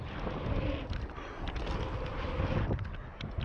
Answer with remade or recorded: recorded